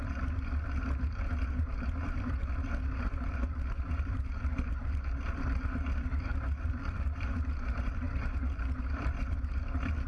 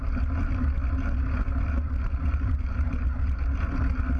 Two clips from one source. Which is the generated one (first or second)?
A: first